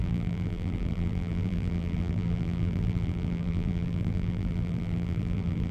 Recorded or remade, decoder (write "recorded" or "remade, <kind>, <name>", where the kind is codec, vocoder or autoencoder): remade, vocoder, BigVGAN v2